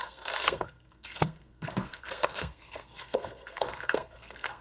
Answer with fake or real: fake